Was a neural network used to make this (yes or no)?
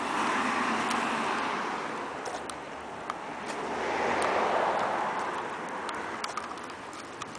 no